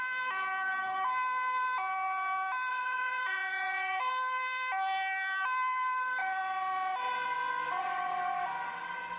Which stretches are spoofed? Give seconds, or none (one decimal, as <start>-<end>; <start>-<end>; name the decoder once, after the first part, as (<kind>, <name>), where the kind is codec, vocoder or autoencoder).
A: 2.7-4.1 (vocoder, Vocos)